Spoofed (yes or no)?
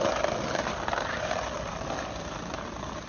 no